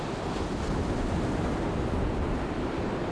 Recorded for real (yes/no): yes